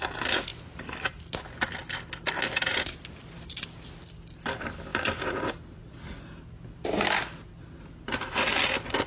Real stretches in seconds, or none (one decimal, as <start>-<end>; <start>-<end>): 0.0-9.1